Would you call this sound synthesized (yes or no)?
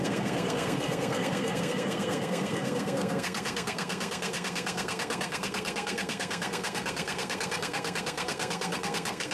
yes